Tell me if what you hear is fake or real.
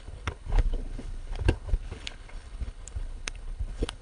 fake